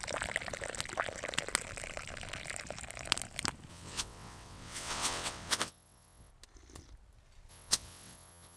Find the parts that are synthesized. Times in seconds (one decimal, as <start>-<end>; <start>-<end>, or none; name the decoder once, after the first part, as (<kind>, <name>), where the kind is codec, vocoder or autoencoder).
3.7-6.3 (vocoder, WaveNeXt); 7.5-8.6